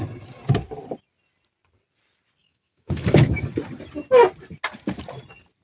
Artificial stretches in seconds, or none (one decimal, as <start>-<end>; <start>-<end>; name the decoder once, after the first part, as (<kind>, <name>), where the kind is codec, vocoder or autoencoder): 2.4-3.5 (autoencoder, DAC-VAE)